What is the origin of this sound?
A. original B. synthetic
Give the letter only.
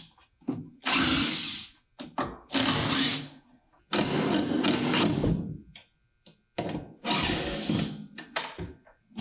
A